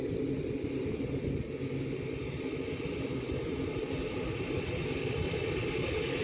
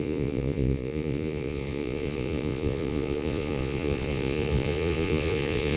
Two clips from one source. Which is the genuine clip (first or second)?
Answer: first